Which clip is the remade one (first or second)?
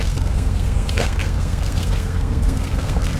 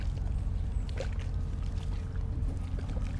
first